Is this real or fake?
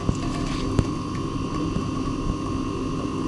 real